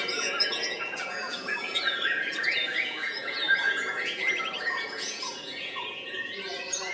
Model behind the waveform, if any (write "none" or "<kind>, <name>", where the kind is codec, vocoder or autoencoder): vocoder, Vocos